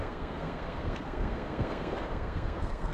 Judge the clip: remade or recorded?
remade